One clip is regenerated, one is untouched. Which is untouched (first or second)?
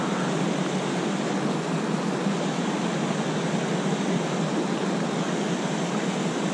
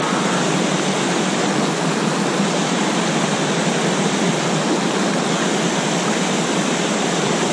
first